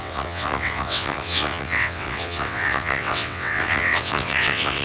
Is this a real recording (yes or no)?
no